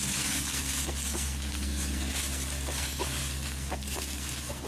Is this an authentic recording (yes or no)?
no